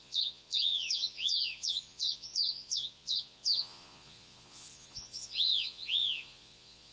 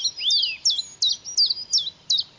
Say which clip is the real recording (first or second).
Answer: second